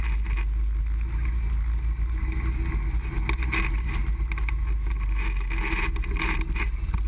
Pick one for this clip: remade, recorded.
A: recorded